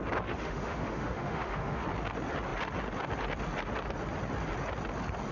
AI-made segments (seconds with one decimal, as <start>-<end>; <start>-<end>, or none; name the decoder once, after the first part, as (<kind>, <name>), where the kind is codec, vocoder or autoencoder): 0.4-1.8 (autoencoder, DAC-VAE)